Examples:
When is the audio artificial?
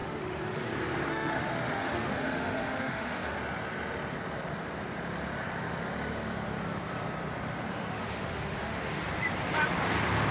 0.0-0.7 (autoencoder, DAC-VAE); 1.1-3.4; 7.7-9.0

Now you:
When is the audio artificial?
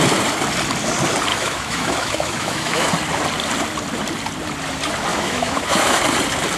1.3-2.9 (autoencoder, DAC-VAE); 5.1-6.0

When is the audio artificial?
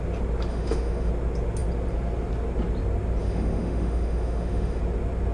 0.5-1.1 (autoencoder, DAC-VAE); 3.2-4.8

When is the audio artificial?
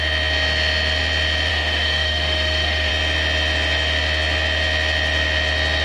1.5-2.9 (autoencoder, DAC-VAE)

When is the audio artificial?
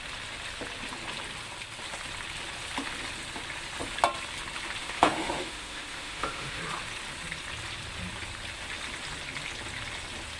4.8-6.6 (autoencoder, DAC-VAE)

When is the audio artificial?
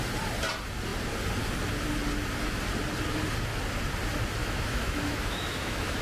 4.4-6.0 (autoencoder, DAC-VAE)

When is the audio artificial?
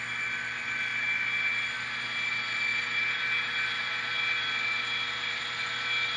none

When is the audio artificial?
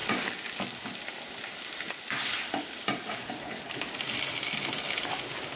none